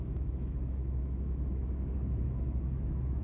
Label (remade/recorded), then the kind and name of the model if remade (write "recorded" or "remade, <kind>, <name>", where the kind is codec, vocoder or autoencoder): remade, autoencoder, DAC-VAE